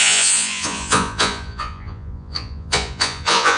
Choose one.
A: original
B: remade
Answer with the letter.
B